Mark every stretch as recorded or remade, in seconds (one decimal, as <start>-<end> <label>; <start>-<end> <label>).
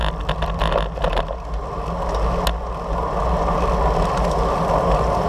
0.0-5.3 recorded